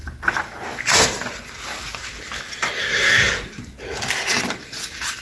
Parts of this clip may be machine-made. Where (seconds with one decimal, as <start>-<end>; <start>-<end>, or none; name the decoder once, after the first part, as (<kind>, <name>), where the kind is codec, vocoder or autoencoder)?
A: 2.8-3.6 (codec, SNAC)